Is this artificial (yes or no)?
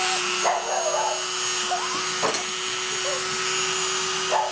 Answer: no